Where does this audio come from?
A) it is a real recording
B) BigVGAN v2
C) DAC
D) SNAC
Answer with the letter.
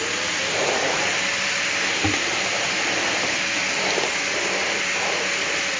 A